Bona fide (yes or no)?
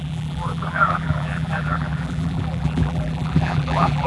no